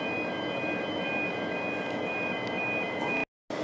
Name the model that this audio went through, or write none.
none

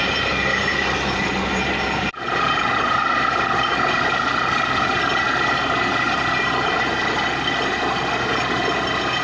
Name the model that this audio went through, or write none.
none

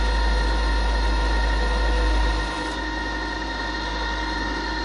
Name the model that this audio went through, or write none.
none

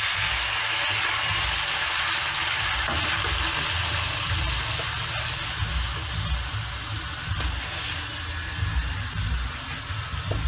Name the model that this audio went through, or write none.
none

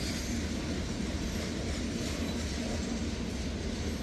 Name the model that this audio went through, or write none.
none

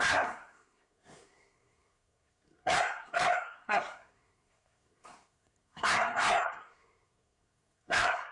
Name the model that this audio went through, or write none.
codec, SNAC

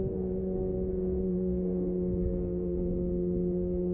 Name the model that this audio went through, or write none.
codec, SNAC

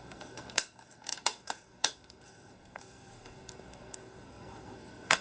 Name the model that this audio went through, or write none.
codec, SNAC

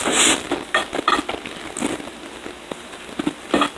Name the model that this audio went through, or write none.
none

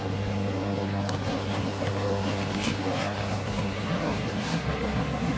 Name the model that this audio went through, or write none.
codec, SNAC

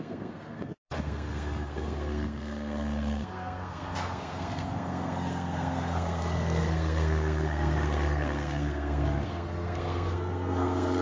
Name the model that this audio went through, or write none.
codec, SNAC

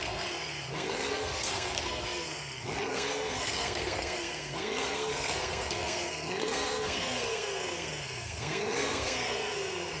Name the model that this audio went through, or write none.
codec, SNAC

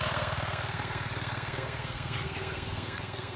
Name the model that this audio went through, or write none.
codec, SNAC